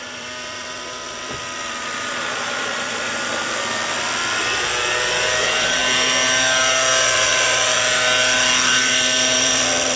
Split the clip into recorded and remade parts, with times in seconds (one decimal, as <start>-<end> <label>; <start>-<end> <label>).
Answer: 0.0-5.8 remade; 5.8-7.2 recorded; 7.2-7.7 remade; 7.7-8.7 recorded; 8.7-10.0 remade